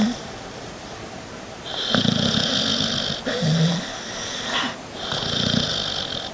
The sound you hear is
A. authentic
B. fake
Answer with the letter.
A